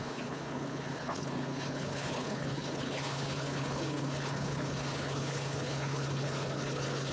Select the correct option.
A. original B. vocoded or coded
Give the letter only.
B